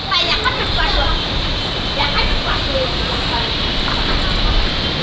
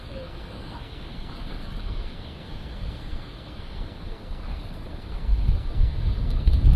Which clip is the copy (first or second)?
second